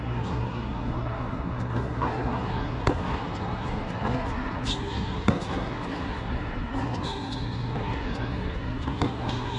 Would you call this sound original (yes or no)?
no